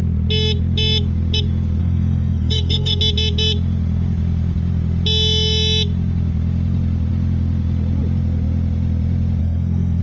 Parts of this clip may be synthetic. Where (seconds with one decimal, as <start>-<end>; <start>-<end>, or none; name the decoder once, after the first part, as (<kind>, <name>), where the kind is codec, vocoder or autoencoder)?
1.8-3.0 (codec, SNAC); 9.4-10.0